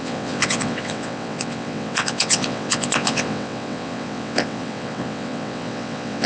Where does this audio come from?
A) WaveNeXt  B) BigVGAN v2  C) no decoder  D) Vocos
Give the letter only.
A